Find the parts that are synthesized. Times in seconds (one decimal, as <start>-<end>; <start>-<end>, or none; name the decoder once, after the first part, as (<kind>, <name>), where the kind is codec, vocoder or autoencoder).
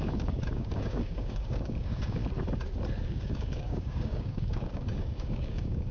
0.0-2.2 (codec, DAC); 3.1-5.9